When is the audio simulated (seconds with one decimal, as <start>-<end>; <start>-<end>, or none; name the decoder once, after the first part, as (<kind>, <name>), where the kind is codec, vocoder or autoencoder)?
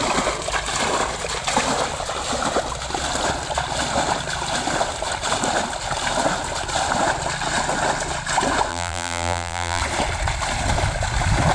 8.7-9.8 (vocoder, BigVGAN v2)